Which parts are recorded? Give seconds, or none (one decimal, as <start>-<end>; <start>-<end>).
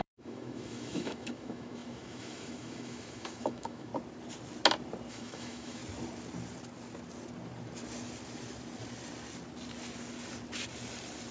3.9-5.1; 5.8-11.3